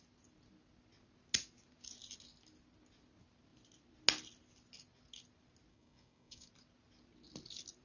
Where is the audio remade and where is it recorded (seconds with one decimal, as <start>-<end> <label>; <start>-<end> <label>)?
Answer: 0.0-5.7 recorded; 5.7-6.5 remade; 6.5-7.8 recorded